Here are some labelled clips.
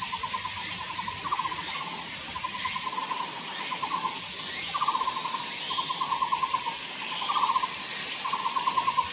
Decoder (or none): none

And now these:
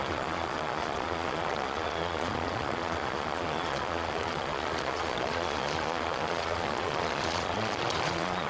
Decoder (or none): vocoder, Vocos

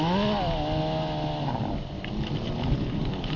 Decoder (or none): none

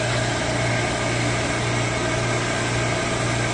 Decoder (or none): none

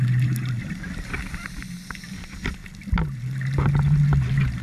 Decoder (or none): none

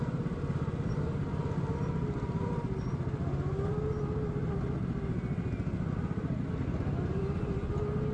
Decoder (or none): none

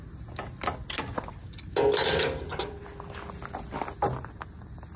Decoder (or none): none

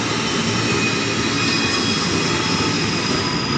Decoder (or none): none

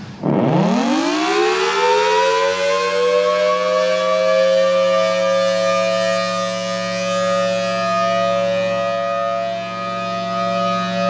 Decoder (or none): none